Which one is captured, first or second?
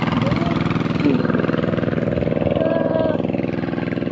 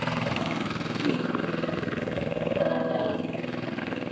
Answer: first